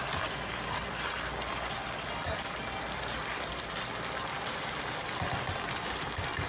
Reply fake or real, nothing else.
real